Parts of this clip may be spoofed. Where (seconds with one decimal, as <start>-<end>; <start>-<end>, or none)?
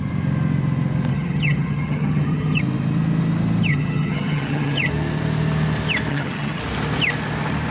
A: 1.1-2.6; 3.7-4.9; 6.1-6.6